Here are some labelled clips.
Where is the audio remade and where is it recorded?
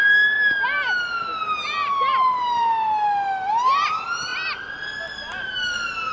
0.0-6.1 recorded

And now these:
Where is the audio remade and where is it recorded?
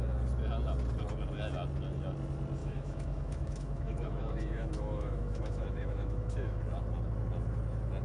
0.0-2.6 recorded; 2.6-6.6 remade; 6.6-8.0 recorded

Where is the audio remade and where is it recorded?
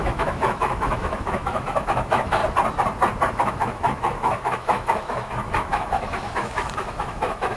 0.0-2.4 remade; 2.4-3.3 recorded; 3.3-7.6 remade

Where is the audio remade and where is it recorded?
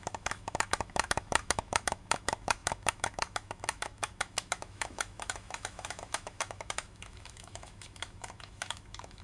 0.0-9.2 remade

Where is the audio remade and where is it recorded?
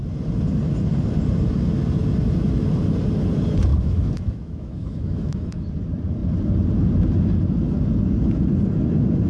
0.0-3.7 recorded; 3.7-5.7 remade; 5.7-9.3 recorded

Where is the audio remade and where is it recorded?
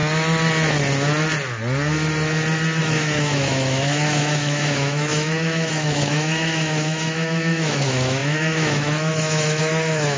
0.0-2.8 recorded; 2.8-10.2 remade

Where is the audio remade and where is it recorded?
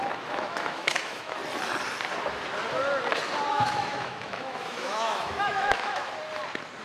0.0-1.4 remade; 1.4-3.5 recorded; 3.5-6.1 remade; 6.1-6.8 recorded